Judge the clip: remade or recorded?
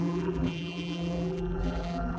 remade